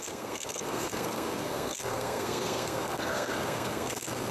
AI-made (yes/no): yes